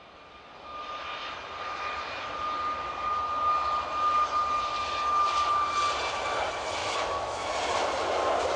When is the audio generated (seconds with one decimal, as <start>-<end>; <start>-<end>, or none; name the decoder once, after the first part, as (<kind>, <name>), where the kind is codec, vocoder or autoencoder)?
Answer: 6.8-7.5 (autoencoder, DAC-VAE)